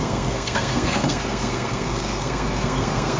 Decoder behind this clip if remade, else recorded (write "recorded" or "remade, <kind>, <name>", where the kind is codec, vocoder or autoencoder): remade, codec, SNAC